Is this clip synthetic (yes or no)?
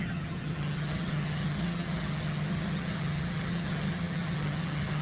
yes